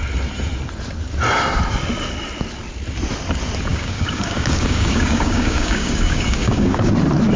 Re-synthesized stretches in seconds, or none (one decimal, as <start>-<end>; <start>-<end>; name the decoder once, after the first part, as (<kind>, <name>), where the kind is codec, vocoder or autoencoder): 3.7-6.9 (codec, DAC)